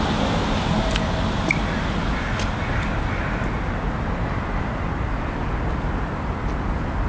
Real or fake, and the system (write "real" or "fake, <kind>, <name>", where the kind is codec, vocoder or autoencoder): real